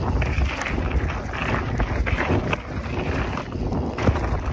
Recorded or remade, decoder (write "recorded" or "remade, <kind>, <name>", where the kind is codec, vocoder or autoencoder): recorded